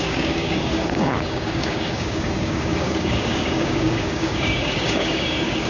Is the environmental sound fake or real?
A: fake